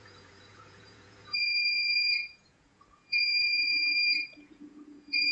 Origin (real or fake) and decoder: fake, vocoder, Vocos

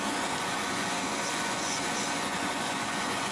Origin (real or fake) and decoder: fake, vocoder, Vocos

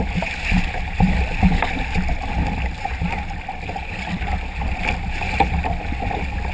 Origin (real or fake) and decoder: real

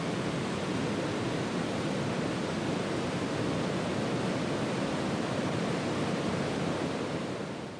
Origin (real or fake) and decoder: real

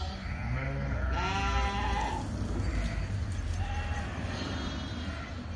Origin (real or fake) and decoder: real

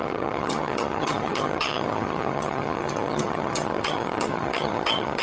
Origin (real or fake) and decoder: fake, vocoder, HiFi-GAN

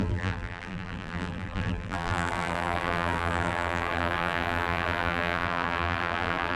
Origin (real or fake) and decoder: fake, vocoder, BigVGAN v2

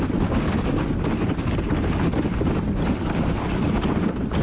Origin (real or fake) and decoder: real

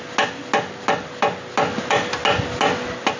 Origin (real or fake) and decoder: real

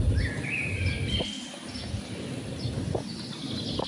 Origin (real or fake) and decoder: real